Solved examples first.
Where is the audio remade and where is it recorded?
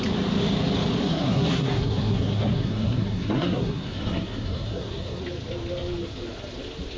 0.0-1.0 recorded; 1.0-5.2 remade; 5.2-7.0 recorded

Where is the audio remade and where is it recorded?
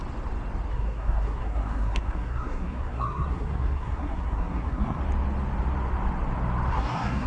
0.0-0.7 recorded; 0.7-5.0 remade; 5.0-6.7 recorded; 6.7-7.3 remade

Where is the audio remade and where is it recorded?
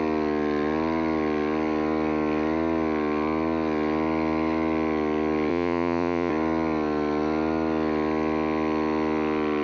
0.0-5.5 recorded; 5.5-6.3 remade; 6.3-9.6 recorded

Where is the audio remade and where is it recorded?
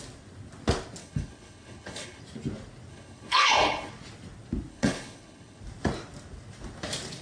0.0-1.0 recorded; 1.0-2.2 remade; 2.2-2.9 recorded; 2.9-3.9 remade; 3.9-4.7 recorded; 4.7-5.6 remade; 5.6-7.2 recorded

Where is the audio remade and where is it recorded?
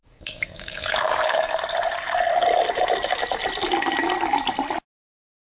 0.0-1.5 remade; 1.5-5.4 recorded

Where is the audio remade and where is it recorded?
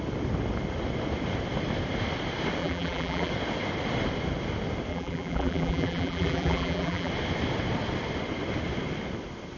0.0-2.6 recorded; 2.6-3.3 remade; 3.3-4.9 recorded; 4.9-7.1 remade; 7.1-9.6 recorded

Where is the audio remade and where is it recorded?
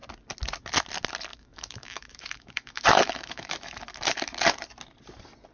0.0-1.3 recorded; 1.3-3.8 remade; 3.8-5.5 recorded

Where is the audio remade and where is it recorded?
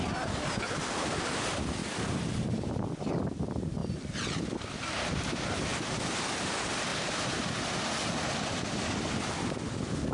0.0-1.8 recorded; 1.8-2.7 remade; 2.7-6.9 recorded; 6.9-7.9 remade; 7.9-10.1 recorded